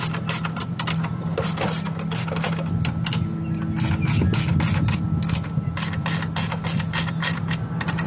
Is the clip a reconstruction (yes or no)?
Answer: no